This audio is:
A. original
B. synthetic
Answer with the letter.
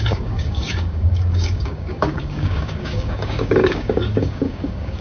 B